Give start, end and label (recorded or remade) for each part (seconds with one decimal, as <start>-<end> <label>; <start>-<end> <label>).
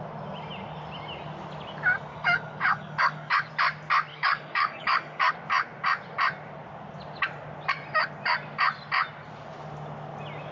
0.0-2.1 recorded; 2.1-3.5 remade; 3.5-4.1 recorded; 4.1-5.3 remade; 5.3-10.5 recorded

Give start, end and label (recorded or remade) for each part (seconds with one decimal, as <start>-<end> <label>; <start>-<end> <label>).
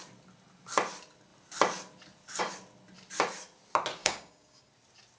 0.0-4.0 recorded; 4.0-4.7 remade; 4.7-5.2 recorded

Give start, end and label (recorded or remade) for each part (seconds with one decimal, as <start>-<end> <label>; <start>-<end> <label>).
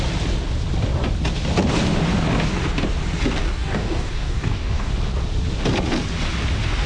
0.0-3.4 recorded; 3.4-4.9 remade; 4.9-6.9 recorded